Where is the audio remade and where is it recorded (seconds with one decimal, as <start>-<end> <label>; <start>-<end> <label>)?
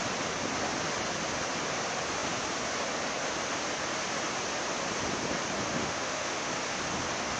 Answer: 0.0-5.7 recorded; 5.7-6.5 remade; 6.5-7.4 recorded